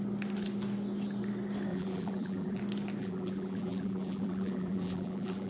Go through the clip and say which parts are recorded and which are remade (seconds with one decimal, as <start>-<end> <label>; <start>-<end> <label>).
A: 0.0-1.7 recorded; 1.7-2.6 remade; 2.6-3.0 recorded; 3.0-5.5 remade